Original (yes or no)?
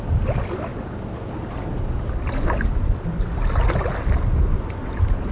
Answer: yes